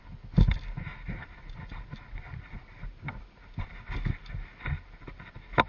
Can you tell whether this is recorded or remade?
recorded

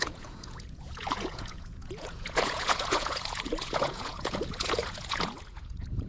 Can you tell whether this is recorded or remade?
remade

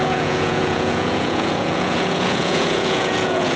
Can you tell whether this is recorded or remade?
remade